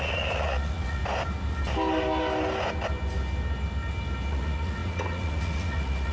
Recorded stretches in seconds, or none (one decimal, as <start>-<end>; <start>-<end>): 1.0-4.3

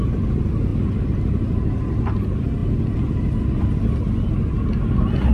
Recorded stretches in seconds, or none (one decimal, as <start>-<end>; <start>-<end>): 0.0-5.3

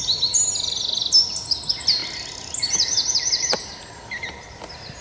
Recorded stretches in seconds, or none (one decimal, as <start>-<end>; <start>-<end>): 0.0-5.0